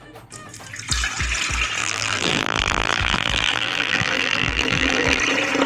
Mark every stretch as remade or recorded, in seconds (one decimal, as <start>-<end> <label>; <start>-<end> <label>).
0.0-1.8 recorded; 1.8-5.2 remade; 5.2-5.7 recorded